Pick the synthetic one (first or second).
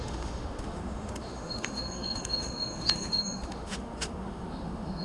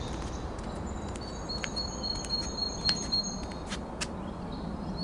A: first